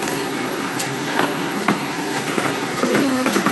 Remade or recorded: remade